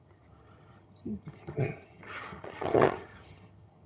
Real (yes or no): no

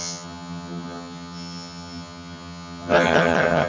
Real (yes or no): no